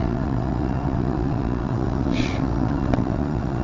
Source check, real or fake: fake